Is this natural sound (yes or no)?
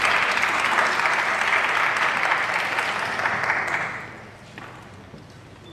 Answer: yes